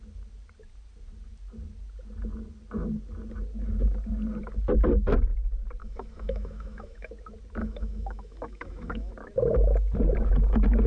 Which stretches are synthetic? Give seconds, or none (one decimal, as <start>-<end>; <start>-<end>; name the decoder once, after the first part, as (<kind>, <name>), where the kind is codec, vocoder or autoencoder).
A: 5.8-7.1 (autoencoder, DAC-VAE); 7.6-9.1